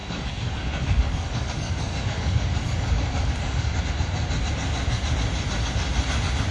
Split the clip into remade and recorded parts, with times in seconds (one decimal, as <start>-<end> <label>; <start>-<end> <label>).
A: 0.0-3.8 remade; 3.8-6.5 recorded